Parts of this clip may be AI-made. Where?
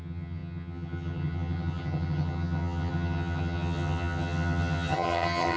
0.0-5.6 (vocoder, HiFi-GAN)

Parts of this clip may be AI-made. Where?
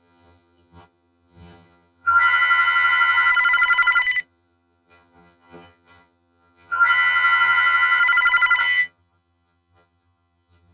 0.0-3.3 (vocoder, HiFi-GAN); 4.2-8.0; 8.6-10.7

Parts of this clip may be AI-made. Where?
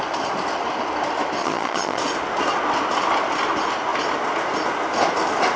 1.4-2.0 (vocoder, HiFi-GAN)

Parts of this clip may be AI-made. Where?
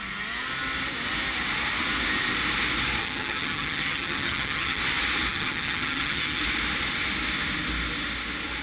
3.0-4.8 (vocoder, HiFi-GAN); 5.3-6.4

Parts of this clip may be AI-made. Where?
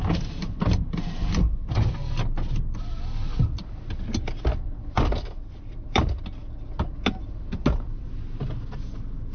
none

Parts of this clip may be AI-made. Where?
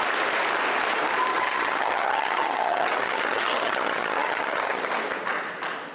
1.3-4.8 (vocoder, HiFi-GAN)